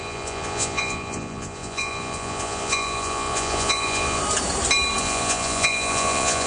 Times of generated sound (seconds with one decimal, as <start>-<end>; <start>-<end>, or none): 0.0-4.2; 5.0-6.5